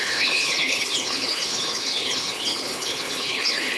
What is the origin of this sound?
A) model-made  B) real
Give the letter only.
A